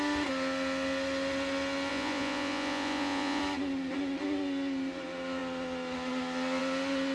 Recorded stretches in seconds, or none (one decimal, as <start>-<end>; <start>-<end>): 0.0-1.9; 3.4-7.1